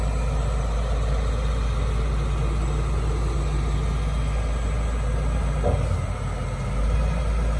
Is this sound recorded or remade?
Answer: recorded